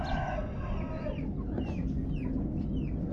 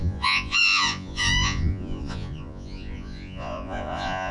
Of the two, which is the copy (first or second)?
second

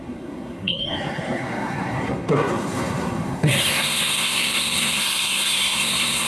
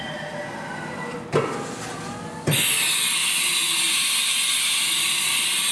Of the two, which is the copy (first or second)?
first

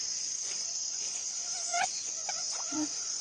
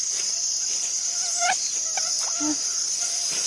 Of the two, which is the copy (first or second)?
first